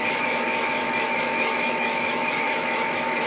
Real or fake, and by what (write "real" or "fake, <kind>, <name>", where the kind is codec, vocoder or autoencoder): fake, autoencoder, DAC-VAE